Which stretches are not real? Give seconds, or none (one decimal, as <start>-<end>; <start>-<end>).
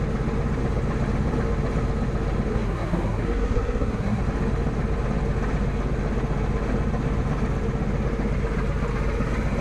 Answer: 2.5-4.2